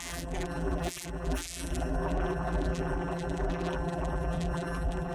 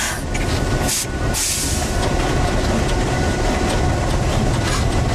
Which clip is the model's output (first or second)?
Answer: first